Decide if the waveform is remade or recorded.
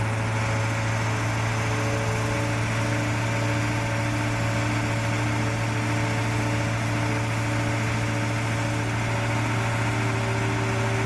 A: recorded